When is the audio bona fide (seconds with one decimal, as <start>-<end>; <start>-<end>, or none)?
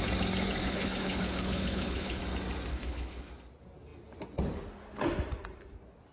0.0-0.6; 2.2-2.7; 3.3-6.1